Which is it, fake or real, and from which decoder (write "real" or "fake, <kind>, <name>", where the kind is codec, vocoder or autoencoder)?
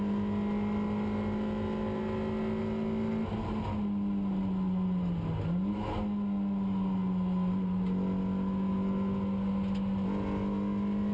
real